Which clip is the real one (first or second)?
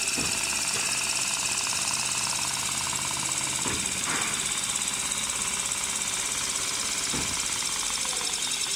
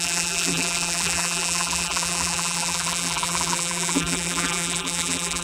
first